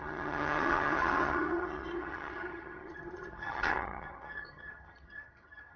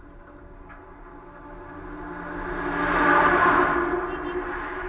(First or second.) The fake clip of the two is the first